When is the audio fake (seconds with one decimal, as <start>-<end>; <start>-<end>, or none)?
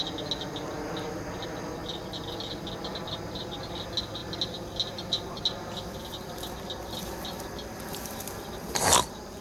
none